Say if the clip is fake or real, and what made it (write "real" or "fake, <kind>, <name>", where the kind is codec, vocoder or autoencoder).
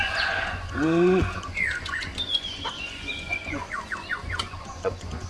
fake, vocoder, Vocos